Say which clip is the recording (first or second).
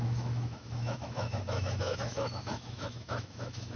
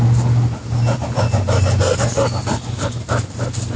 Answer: second